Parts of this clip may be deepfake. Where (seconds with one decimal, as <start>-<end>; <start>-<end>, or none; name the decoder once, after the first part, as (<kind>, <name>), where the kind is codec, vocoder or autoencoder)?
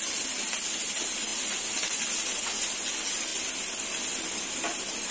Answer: none